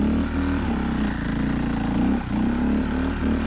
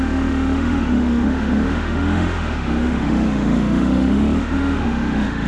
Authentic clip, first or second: first